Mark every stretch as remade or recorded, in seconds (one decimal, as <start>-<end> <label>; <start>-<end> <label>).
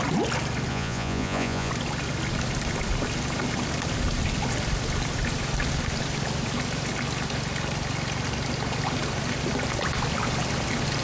0.0-0.7 recorded; 0.7-1.7 remade; 1.7-11.0 recorded